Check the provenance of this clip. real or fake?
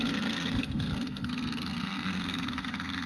fake